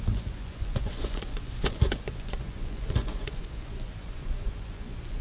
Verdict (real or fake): fake